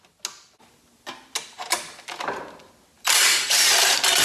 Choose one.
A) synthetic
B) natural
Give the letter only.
B